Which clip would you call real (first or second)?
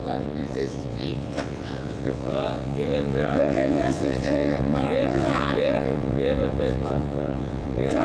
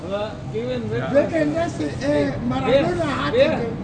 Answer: second